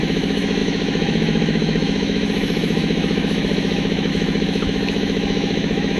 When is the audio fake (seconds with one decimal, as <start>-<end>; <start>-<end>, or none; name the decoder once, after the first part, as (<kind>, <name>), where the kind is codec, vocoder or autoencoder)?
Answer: 0.0-6.0 (autoencoder, DAC-VAE)